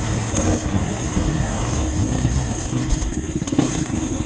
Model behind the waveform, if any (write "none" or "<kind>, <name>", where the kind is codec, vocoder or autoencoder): codec, SNAC